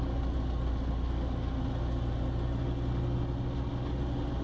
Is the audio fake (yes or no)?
no